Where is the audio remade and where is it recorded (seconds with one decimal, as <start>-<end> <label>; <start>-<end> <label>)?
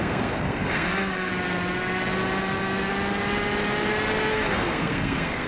0.0-1.3 remade; 1.3-4.3 recorded; 4.3-5.5 remade